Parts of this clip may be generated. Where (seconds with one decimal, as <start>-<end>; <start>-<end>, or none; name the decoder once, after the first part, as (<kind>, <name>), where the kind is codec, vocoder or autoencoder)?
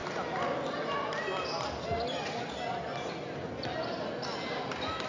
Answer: none